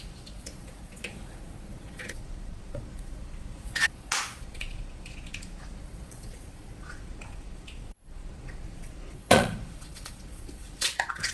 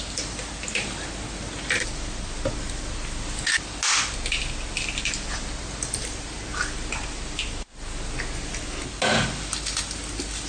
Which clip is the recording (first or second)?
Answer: second